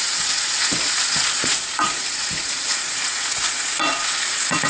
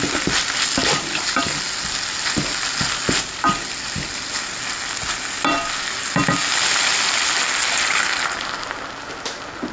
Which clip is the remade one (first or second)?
first